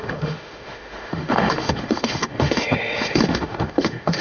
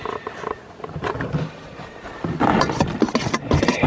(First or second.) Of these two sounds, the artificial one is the first